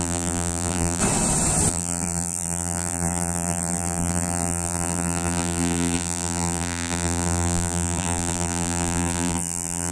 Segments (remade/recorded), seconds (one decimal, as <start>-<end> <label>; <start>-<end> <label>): 0.0-1.0 remade; 1.0-1.7 recorded; 1.7-9.9 remade